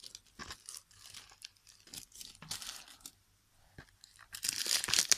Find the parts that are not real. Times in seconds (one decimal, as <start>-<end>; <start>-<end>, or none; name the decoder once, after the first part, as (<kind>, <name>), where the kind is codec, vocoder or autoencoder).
none